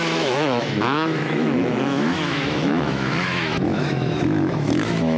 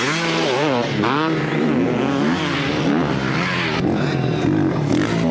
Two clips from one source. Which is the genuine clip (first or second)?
second